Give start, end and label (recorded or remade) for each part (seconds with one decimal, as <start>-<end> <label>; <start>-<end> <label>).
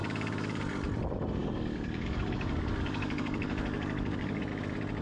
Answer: 0.0-0.6 remade; 0.6-1.4 recorded; 1.4-4.4 remade; 4.4-5.0 recorded